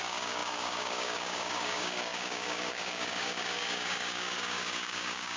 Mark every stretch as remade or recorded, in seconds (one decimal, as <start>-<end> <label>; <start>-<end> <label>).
0.0-5.4 remade